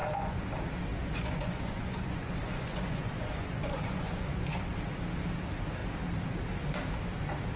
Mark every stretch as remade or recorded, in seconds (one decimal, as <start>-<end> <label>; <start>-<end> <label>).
0.0-0.5 remade; 0.5-1.0 recorded; 1.0-4.7 remade; 4.7-7.6 recorded